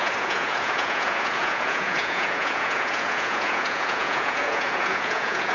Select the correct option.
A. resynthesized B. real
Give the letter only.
A